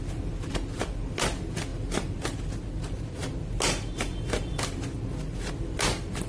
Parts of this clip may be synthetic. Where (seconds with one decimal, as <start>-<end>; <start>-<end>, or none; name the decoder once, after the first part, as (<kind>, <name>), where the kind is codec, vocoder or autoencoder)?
none

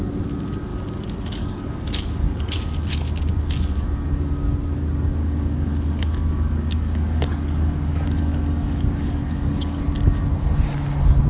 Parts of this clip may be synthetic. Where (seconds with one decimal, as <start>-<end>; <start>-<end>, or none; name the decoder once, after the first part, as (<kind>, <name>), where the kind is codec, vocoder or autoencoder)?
0.7-2.6 (codec, DAC); 5.2-9.8

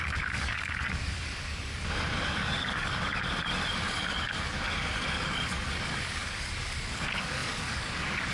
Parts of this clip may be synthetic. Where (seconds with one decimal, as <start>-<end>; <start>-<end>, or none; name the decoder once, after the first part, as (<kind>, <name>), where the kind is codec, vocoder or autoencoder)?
0.0-3.1 (codec, DAC); 3.8-8.3

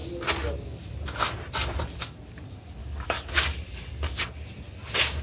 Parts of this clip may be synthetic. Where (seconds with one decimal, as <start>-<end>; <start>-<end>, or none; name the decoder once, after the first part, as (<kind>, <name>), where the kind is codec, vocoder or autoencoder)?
2.8-4.2 (codec, DAC)

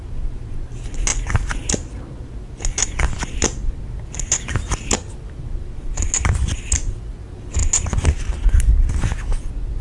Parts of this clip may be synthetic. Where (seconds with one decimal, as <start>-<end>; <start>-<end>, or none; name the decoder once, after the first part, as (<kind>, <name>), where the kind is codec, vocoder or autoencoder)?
none

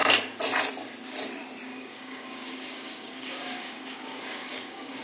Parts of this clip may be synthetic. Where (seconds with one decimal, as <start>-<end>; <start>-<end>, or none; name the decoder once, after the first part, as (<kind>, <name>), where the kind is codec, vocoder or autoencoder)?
1.7-5.0 (codec, DAC)

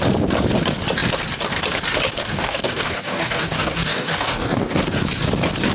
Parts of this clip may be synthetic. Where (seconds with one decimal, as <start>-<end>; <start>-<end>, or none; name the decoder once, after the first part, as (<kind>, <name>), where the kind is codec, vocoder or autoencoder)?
2.2-4.8 (codec, DAC)